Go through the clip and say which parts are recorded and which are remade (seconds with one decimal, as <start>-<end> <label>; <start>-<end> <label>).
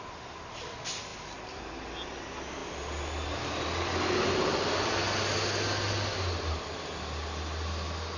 0.0-8.2 recorded